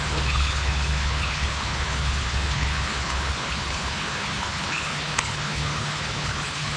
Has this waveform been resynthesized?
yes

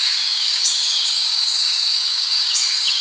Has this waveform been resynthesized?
yes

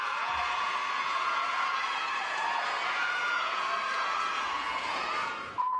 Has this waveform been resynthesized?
yes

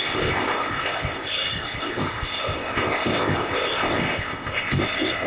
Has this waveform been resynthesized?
yes